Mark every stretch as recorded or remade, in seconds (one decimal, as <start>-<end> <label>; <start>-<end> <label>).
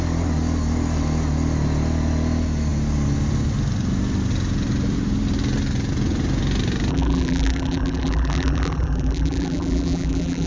0.0-6.9 recorded; 6.9-10.5 remade